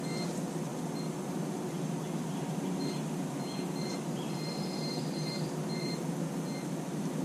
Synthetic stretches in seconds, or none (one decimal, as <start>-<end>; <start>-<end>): none